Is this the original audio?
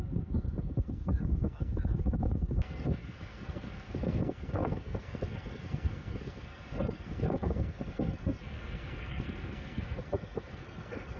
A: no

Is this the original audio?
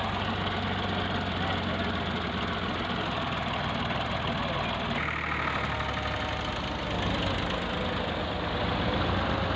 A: yes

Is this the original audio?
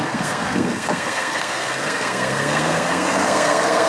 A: no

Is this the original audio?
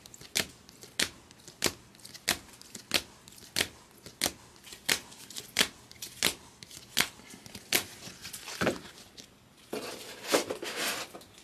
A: yes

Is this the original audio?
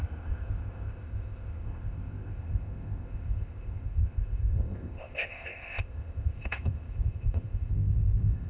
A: no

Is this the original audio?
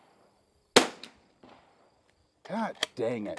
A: yes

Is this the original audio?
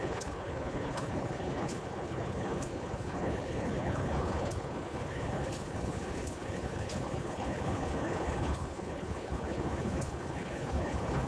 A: no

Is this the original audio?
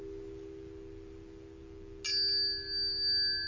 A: yes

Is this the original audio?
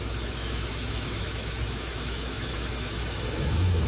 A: no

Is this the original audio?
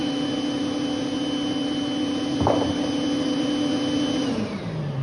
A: yes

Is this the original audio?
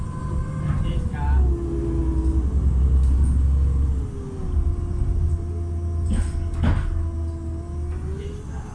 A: yes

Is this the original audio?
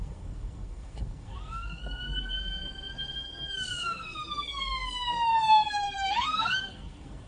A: no